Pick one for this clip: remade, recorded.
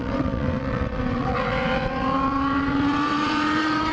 remade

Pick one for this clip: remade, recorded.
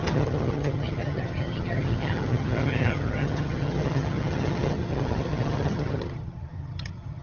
remade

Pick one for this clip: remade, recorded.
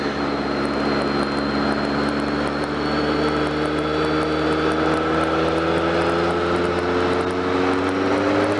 recorded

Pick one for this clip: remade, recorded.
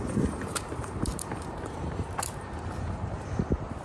remade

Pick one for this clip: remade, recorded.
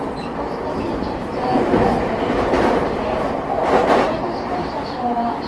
remade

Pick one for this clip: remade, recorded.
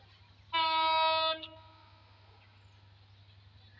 recorded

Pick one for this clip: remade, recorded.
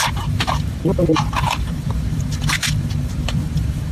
remade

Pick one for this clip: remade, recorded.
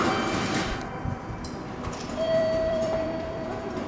remade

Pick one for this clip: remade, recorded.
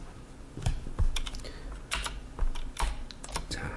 recorded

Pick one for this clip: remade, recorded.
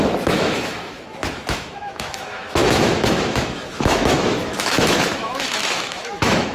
remade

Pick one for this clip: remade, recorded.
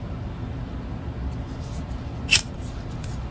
recorded